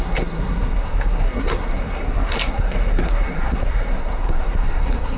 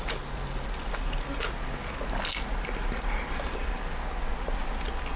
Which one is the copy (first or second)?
first